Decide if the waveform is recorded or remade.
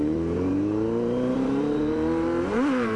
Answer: remade